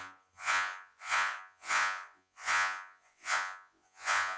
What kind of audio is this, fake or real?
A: fake